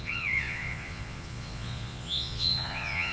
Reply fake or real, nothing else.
fake